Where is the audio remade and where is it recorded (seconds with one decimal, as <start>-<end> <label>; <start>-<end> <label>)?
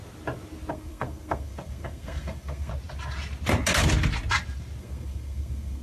0.0-0.7 recorded; 0.7-2.7 remade; 2.7-4.8 recorded; 4.8-5.8 remade